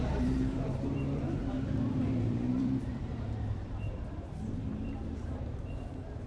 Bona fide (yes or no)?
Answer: no